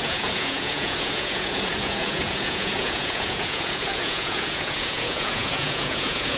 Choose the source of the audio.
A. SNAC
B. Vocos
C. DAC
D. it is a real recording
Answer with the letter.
B